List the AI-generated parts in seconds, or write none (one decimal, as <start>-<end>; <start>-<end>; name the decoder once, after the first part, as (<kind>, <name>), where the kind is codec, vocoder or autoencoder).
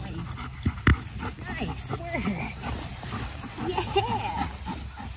none